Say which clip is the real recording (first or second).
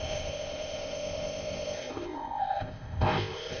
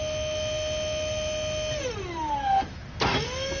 second